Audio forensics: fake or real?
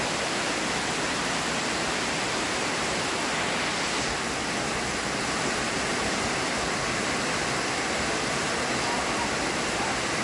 real